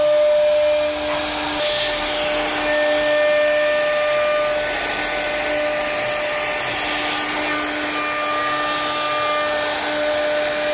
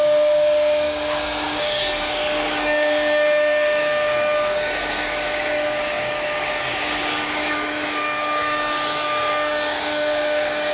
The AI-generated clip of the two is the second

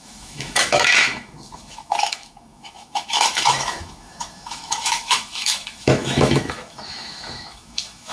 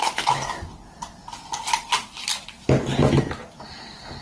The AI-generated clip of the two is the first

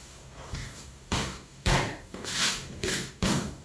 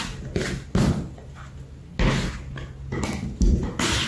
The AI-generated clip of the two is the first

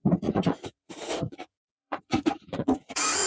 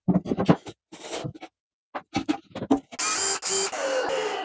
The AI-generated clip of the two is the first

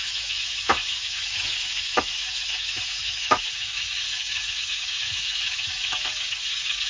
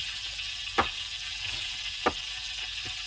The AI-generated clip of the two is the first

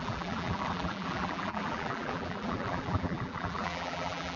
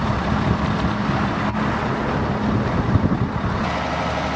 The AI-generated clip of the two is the first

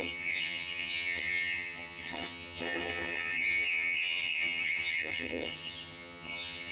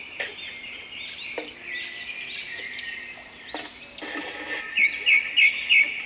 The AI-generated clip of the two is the first